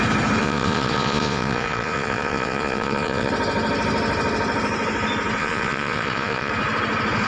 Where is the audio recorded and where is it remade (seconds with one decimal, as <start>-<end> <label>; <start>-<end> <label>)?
0.0-0.4 recorded; 0.4-3.3 remade; 3.3-5.4 recorded; 5.4-6.5 remade; 6.5-7.3 recorded